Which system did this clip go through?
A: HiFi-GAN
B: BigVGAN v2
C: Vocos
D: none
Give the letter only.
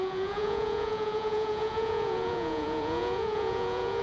C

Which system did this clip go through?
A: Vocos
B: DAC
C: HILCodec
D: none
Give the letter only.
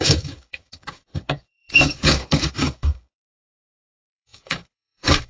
B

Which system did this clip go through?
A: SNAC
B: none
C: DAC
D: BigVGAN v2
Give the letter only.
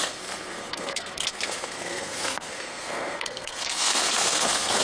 A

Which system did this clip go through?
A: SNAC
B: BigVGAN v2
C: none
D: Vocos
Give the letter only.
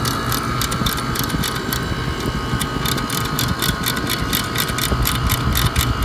C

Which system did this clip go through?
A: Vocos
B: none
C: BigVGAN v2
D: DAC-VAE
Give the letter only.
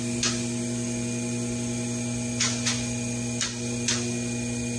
B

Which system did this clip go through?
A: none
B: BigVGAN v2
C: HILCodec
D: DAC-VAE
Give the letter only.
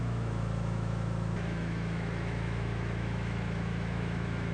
D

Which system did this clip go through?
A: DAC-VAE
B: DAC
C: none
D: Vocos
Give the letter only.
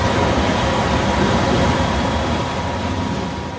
C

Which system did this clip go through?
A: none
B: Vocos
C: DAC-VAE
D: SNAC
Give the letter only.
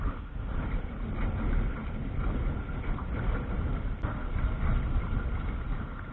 A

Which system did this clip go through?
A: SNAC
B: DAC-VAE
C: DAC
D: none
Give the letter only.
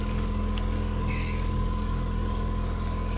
C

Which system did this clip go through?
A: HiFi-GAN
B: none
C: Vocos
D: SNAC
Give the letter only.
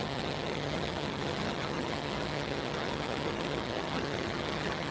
A